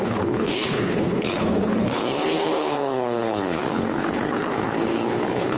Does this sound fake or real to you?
fake